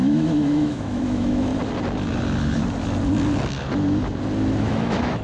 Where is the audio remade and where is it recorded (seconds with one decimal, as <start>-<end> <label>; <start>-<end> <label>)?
0.0-1.5 remade; 1.5-4.6 recorded; 4.6-5.2 remade